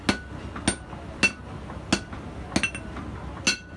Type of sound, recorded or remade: recorded